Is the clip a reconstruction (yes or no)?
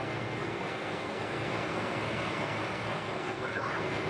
yes